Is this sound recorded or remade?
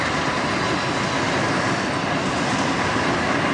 recorded